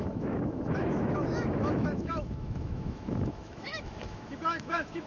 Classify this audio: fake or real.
fake